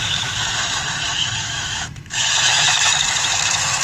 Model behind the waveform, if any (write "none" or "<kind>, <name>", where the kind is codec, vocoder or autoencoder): autoencoder, DAC-VAE